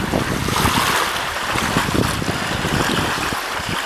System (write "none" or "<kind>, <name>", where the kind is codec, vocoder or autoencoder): none